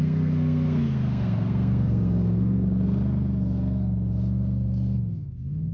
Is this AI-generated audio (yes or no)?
yes